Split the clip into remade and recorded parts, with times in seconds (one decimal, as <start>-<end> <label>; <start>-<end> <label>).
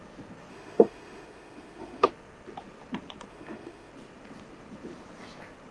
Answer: 0.0-0.5 recorded; 0.5-2.1 remade; 2.1-3.3 recorded; 3.3-3.9 remade; 3.9-5.7 recorded